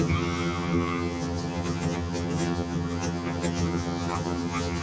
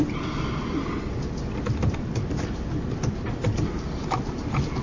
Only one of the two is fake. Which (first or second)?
first